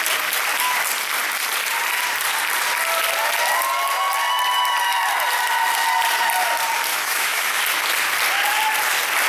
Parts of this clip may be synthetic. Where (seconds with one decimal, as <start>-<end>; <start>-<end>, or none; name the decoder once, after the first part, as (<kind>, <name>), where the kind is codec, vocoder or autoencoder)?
6.9-7.6 (autoencoder, DAC-VAE)